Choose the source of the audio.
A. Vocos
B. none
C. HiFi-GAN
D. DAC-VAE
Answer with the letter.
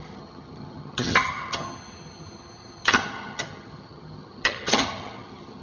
C